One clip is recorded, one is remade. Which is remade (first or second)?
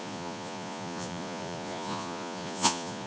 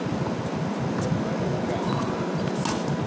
first